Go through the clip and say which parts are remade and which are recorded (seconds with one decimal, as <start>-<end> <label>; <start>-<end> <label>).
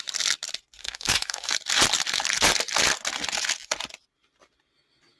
0.0-0.8 recorded; 0.8-1.5 remade; 1.5-5.2 recorded